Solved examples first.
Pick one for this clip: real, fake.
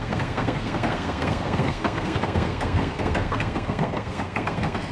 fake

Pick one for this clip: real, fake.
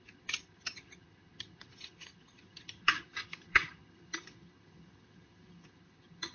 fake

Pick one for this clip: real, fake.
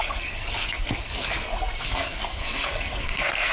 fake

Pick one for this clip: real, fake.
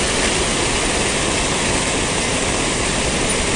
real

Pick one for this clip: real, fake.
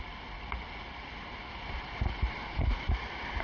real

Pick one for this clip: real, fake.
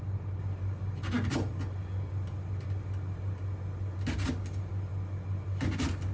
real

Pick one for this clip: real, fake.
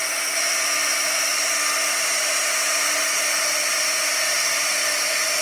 real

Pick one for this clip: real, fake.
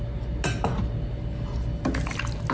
real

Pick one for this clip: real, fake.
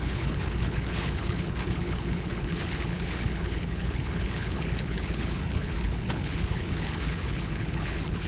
fake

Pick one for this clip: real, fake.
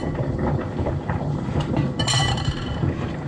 fake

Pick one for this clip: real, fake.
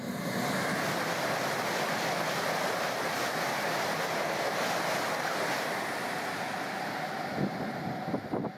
real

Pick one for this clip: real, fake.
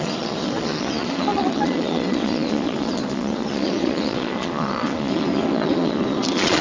fake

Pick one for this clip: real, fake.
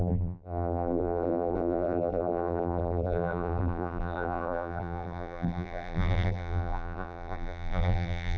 fake